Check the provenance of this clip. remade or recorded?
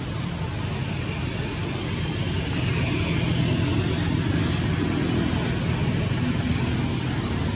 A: recorded